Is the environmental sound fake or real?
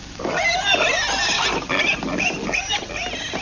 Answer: real